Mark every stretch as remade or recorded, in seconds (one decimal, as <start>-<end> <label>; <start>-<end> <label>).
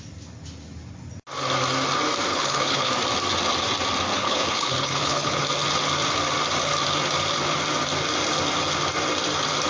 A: 0.0-2.3 recorded; 2.3-2.9 remade; 2.9-4.1 recorded; 4.1-5.4 remade; 5.4-9.7 recorded